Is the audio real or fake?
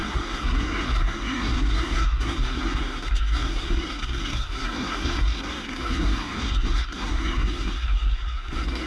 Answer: fake